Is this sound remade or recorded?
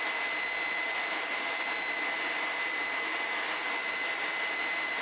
recorded